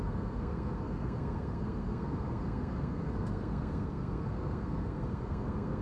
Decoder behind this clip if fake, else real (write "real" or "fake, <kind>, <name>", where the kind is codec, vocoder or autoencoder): fake, codec, SNAC